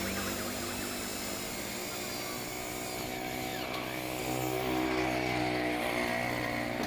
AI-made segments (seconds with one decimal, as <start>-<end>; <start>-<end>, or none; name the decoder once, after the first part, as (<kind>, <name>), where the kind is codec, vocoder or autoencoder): none